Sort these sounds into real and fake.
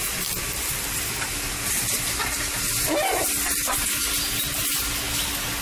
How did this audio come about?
real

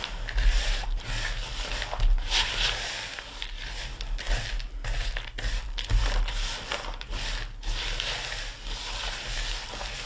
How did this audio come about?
real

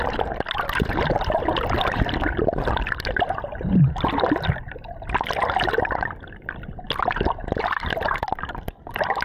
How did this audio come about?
real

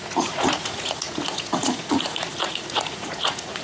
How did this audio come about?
fake